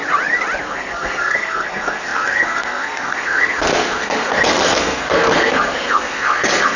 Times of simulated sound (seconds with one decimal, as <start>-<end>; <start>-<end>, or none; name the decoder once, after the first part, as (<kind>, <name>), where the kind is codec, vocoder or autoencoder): 0.6-6.8 (codec, SNAC)